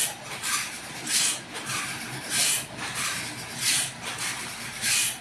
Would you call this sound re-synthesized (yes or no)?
yes